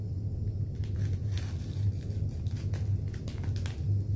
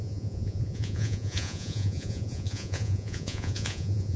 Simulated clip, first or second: second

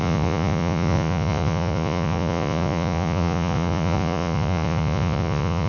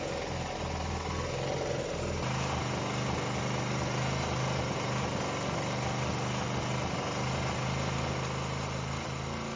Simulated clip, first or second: first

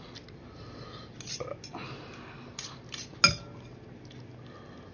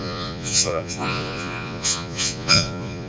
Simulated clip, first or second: second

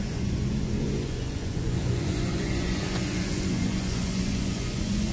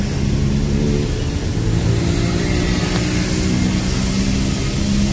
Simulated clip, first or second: first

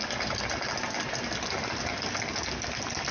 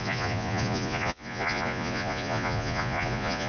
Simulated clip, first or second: second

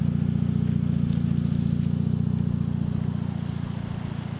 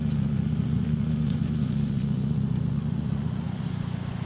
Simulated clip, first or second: second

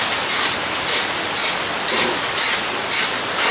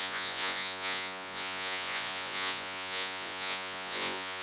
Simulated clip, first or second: second